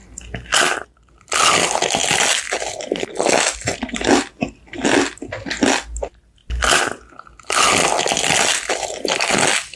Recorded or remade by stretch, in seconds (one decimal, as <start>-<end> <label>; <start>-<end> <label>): 0.0-9.8 recorded